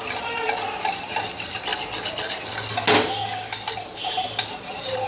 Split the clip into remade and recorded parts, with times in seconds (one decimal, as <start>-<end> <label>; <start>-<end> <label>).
0.0-5.1 recorded